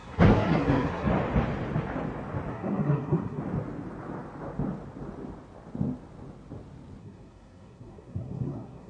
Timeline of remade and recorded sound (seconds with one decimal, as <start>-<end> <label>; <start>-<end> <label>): 0.0-1.1 remade; 1.1-2.5 recorded; 2.5-3.4 remade; 3.4-7.0 recorded; 7.0-8.9 remade